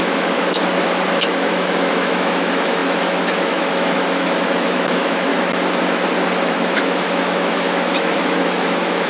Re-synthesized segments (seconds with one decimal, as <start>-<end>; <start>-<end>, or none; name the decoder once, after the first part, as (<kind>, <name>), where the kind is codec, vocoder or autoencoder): 0.0-0.6 (autoencoder, DAC-VAE); 1.2-5.3; 6.5-9.1